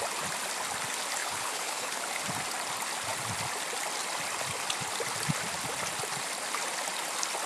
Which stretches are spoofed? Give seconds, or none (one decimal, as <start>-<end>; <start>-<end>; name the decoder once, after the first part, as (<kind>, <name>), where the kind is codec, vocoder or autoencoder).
1.2-2.0 (codec, HILCodec)